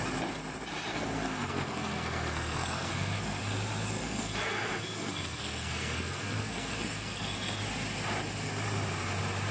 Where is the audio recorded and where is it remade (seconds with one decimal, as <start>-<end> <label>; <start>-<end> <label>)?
0.0-0.9 recorded; 0.9-3.4 remade; 3.4-3.8 recorded; 3.8-7.6 remade; 7.6-9.5 recorded